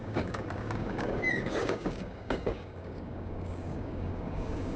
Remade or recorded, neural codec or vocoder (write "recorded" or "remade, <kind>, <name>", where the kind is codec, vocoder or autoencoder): remade, codec, DAC